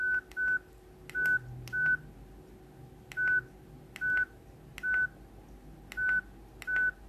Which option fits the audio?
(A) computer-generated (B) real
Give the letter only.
B